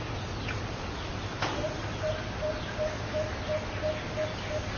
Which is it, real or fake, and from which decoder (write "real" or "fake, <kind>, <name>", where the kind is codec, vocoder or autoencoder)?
real